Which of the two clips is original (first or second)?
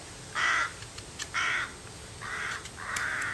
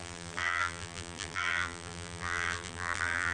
first